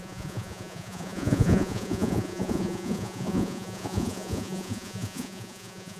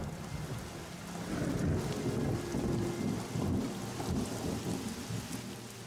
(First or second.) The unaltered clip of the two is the second